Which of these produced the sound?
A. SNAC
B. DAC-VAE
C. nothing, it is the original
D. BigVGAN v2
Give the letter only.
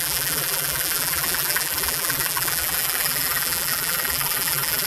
D